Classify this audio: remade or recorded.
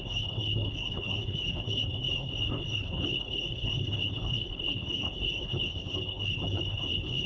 remade